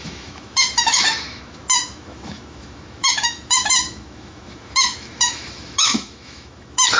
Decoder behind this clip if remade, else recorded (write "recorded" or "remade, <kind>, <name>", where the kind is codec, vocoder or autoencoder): remade, autoencoder, DAC-VAE